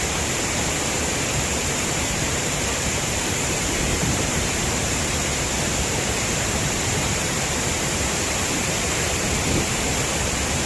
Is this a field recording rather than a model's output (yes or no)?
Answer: no